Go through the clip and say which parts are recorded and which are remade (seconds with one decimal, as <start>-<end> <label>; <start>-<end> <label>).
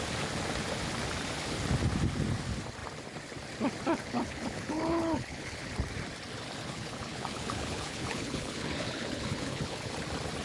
0.0-4.0 recorded; 4.0-5.7 remade; 5.7-6.6 recorded; 6.6-9.9 remade; 9.9-10.4 recorded